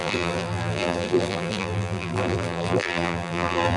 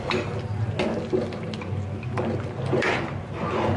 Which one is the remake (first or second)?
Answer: first